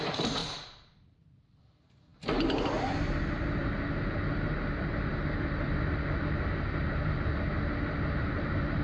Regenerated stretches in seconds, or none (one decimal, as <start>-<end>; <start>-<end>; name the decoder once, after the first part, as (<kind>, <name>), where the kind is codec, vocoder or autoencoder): 0.4-1.6 (vocoder, BigVGAN v2)